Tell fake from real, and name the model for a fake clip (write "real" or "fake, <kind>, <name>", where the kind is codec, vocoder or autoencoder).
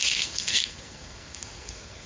fake, codec, SNAC